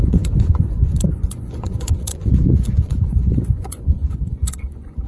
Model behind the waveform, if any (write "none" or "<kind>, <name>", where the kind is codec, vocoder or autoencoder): vocoder, Vocos